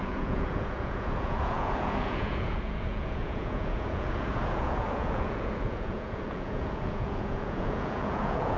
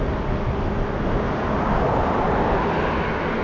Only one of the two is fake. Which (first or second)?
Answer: first